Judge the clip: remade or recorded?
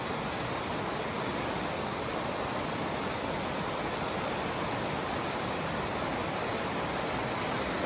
recorded